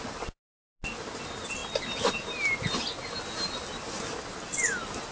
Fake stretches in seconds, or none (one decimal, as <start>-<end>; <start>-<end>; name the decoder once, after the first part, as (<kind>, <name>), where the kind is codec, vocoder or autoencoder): none